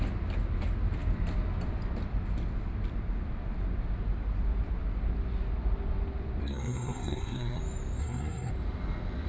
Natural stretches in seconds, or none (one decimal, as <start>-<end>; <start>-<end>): 0.0-6.4; 7.6-8.0; 8.5-9.3